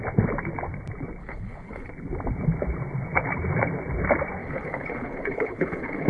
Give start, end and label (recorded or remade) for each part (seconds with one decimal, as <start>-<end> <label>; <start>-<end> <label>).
0.0-1.2 recorded; 1.2-1.9 remade; 1.9-4.4 recorded; 4.4-6.1 remade